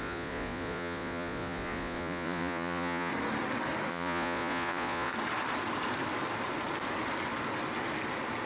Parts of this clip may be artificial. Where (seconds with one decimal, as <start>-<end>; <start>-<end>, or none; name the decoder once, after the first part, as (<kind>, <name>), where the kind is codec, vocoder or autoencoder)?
0.0-3.1 (vocoder, Vocos); 3.9-5.1